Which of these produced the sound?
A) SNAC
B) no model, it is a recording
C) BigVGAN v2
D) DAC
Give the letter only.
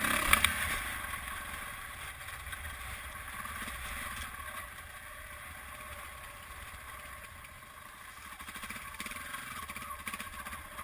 B